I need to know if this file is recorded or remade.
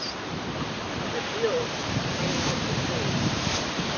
remade